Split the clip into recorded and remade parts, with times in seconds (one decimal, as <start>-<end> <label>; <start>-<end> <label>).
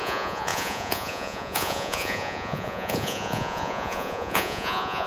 0.0-5.1 remade